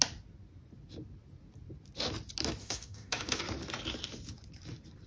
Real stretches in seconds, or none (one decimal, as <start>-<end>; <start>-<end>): 0.0-2.6; 3.4-5.1